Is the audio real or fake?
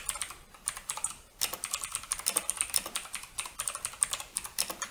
fake